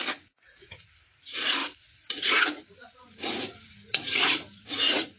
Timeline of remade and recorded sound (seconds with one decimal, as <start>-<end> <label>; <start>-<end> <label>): 0.0-5.2 remade